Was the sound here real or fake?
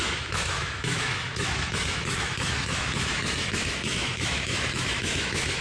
fake